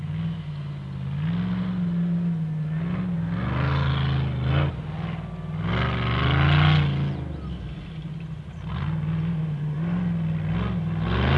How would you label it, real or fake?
real